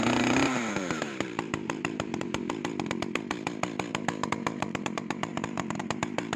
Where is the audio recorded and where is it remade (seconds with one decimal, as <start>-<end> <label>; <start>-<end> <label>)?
0.0-2.4 remade; 2.4-3.9 recorded; 3.9-6.4 remade